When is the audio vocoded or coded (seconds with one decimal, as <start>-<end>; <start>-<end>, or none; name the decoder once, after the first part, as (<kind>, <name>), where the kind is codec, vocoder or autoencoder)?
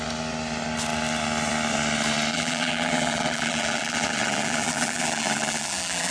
2.3-6.1 (vocoder, BigVGAN v2)